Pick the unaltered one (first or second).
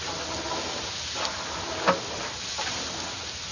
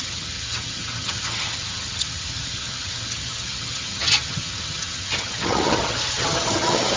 first